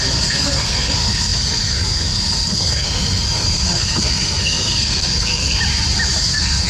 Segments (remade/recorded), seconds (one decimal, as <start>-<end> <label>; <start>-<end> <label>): 0.0-5.6 remade; 5.6-6.2 recorded; 6.2-6.7 remade